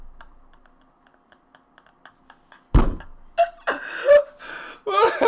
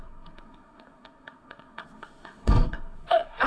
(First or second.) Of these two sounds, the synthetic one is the second